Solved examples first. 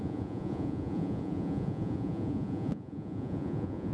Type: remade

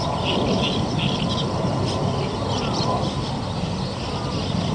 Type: recorded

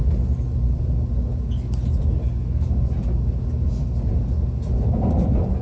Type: recorded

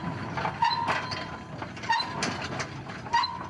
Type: recorded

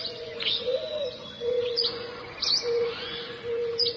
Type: remade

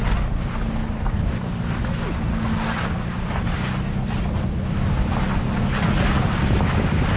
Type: recorded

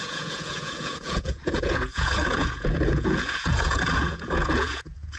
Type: remade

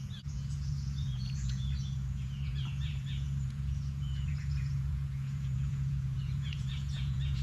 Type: remade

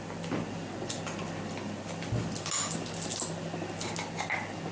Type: recorded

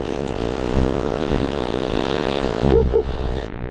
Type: remade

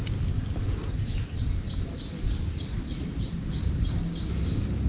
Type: recorded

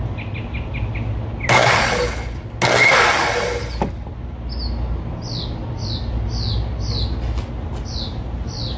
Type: recorded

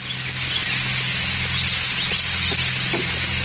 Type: recorded